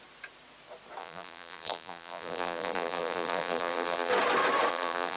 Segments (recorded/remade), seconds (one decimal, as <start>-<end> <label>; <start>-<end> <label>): 0.0-1.0 recorded; 1.0-4.1 remade; 4.1-4.7 recorded; 4.7-5.2 remade